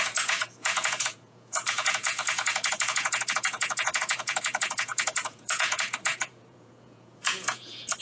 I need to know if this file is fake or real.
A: fake